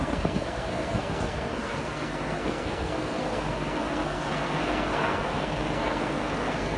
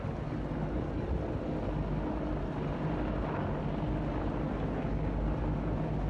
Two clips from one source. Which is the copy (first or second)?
first